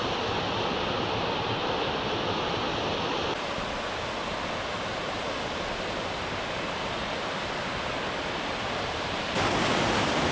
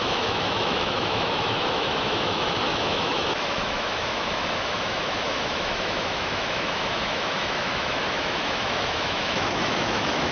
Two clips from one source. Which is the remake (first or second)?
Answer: second